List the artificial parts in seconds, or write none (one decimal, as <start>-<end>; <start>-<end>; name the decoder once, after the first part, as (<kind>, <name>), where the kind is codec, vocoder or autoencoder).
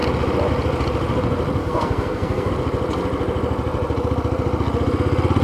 1.6-2.5 (codec, SNAC)